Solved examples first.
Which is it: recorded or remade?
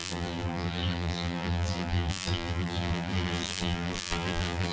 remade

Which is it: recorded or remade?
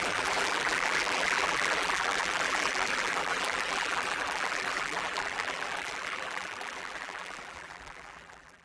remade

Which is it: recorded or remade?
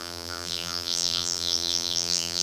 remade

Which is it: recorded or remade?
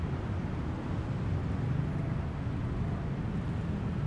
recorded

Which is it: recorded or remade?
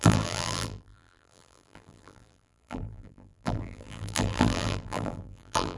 remade